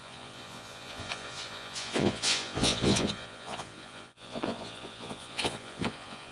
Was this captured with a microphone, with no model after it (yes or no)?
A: no